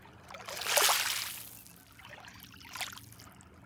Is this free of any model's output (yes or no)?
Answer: yes